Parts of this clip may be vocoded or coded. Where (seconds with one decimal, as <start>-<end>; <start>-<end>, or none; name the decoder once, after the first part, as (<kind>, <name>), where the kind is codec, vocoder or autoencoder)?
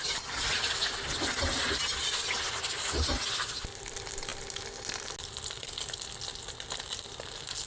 none